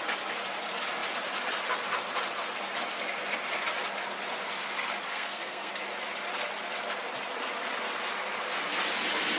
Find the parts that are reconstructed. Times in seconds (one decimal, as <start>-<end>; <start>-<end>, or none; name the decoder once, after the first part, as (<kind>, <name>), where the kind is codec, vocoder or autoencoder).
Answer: 5.1-5.7 (codec, SNAC)